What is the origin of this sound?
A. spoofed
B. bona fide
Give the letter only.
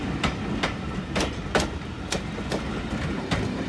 B